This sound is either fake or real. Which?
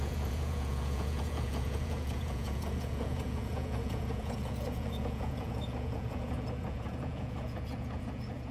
fake